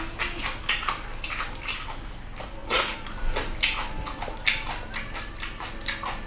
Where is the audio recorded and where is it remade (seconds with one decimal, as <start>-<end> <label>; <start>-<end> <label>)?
0.0-6.3 recorded